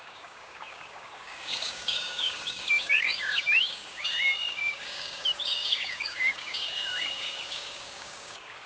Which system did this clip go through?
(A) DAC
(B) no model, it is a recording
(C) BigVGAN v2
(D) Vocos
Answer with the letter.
A